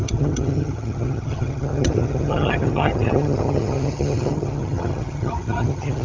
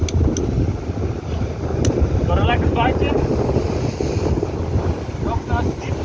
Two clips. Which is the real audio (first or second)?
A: second